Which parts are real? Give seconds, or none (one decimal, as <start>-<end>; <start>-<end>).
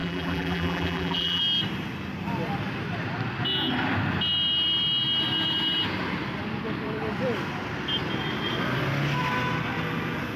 1.4-10.4